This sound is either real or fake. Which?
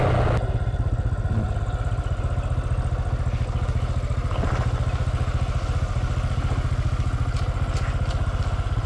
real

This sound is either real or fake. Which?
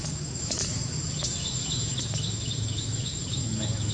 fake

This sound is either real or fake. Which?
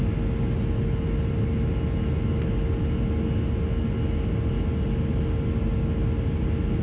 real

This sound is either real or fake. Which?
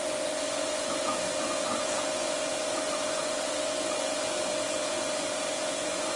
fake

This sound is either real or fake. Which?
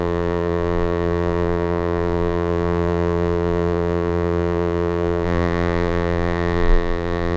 fake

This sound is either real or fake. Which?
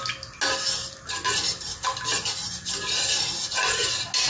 real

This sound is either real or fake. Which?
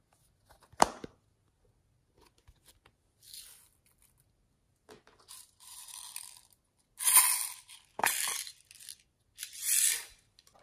real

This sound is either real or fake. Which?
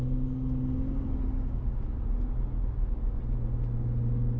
real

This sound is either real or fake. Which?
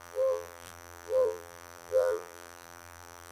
fake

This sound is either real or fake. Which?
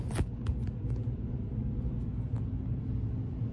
real